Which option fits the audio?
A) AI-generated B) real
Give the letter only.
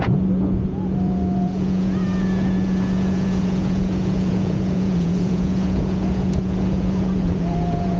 A